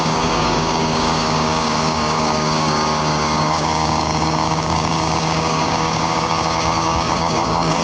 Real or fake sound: fake